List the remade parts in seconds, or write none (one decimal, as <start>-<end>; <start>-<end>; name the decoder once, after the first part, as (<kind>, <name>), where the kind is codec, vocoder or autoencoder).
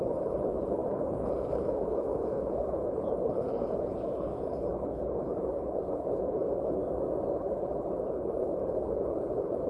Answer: 0.0-6.8 (codec, HILCodec); 7.3-9.7